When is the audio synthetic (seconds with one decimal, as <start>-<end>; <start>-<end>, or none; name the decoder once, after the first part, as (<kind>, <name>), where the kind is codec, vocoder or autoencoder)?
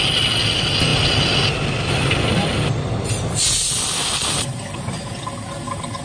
none